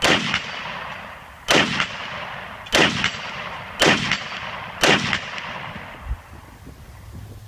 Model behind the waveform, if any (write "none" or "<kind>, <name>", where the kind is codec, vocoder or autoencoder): none